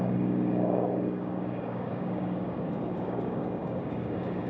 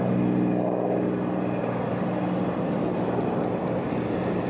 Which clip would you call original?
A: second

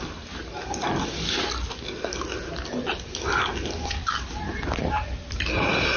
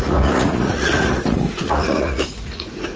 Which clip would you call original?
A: first